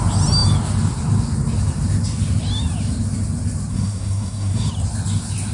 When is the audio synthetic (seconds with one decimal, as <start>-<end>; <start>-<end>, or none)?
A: 3.7-4.7

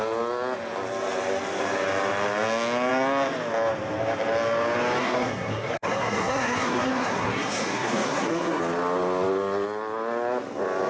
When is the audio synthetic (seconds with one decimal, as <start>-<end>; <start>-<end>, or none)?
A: 5.0-8.6

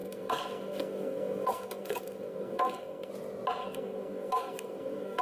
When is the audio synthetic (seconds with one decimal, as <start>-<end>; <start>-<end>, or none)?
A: 0.0-3.1; 3.6-5.2

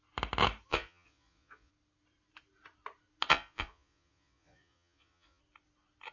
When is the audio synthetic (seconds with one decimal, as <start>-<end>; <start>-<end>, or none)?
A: 0.7-1.7; 3.3-5.4